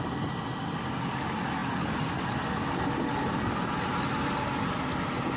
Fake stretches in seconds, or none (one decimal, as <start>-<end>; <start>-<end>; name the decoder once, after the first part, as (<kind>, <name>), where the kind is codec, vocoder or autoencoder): none